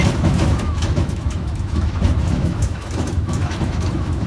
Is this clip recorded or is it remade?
remade